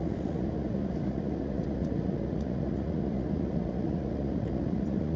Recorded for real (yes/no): no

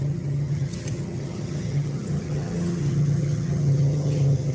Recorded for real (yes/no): no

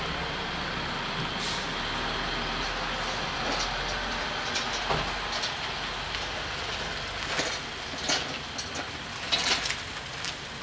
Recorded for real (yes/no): yes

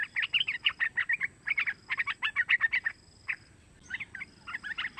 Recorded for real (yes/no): yes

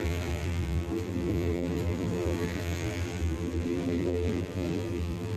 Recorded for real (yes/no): no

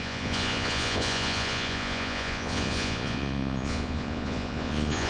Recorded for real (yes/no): no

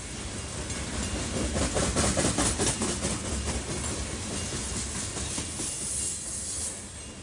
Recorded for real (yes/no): yes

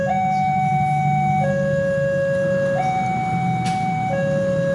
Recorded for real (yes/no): yes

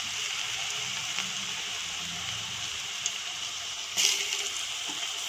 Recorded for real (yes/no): yes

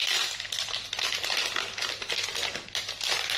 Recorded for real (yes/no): yes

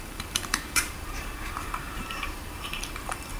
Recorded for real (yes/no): no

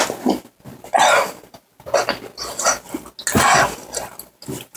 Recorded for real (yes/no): yes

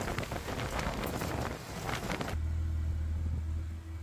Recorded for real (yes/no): yes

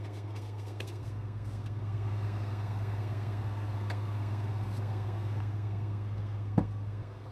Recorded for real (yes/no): no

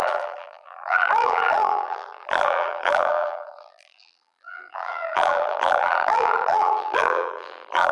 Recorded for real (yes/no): no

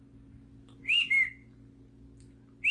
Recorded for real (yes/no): yes